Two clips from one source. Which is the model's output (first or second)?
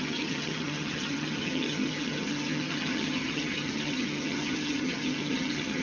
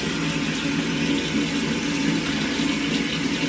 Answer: first